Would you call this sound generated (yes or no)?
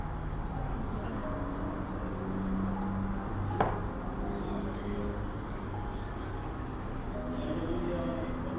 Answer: no